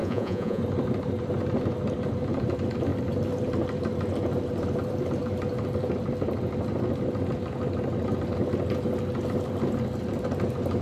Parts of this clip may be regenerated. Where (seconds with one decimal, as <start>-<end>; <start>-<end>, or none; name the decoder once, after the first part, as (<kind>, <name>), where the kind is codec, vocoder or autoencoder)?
0.0-0.6 (vocoder, Vocos)